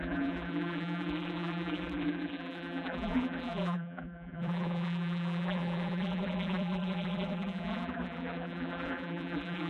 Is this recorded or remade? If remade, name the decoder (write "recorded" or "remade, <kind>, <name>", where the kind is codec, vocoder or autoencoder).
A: remade, vocoder, BigVGAN v2